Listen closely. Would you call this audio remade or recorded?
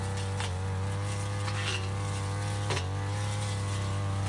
recorded